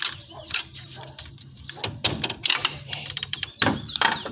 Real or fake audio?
fake